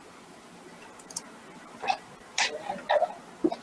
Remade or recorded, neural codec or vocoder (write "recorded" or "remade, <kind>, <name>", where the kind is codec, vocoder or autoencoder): recorded